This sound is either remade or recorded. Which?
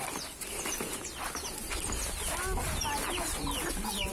recorded